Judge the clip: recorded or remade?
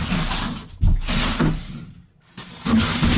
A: recorded